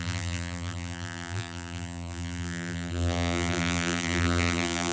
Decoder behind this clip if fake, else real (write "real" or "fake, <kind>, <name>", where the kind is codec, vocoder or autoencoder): fake, vocoder, BigVGAN v2